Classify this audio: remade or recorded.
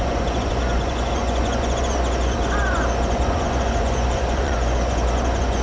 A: remade